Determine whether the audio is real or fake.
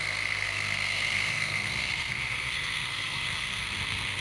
fake